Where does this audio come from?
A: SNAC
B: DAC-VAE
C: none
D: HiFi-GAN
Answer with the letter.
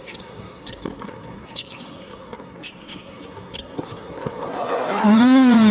A